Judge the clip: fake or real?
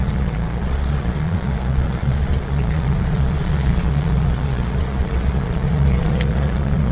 fake